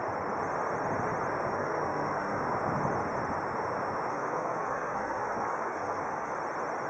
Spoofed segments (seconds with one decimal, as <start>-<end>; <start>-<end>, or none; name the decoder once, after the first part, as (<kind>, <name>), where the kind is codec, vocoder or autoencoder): 1.5-2.4 (codec, SNAC); 4.1-6.3